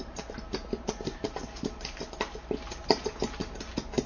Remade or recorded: recorded